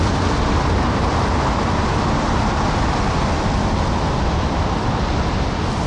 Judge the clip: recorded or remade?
recorded